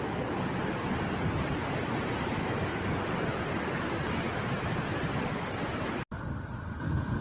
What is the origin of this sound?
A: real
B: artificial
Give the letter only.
A